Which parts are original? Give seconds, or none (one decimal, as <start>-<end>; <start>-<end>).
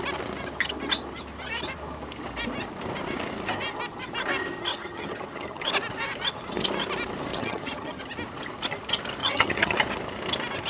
0.0-4.7; 5.7-7.3; 8.0-9.2; 9.8-10.7